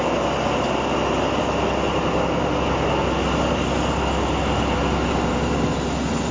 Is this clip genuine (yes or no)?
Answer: yes